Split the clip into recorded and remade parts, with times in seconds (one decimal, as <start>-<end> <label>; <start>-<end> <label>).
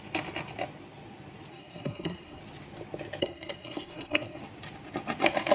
0.0-1.5 recorded; 1.5-2.4 remade; 2.4-3.2 recorded; 3.2-4.4 remade; 4.4-5.5 recorded